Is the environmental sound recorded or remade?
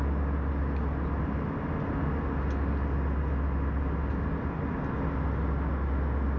recorded